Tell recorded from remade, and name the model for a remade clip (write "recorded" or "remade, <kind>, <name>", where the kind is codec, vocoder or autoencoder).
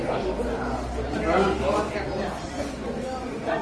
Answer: recorded